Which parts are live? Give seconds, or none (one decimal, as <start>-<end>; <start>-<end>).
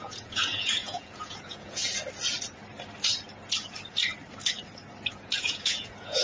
1.8-5.1